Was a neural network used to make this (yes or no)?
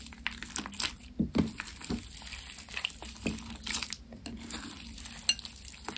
no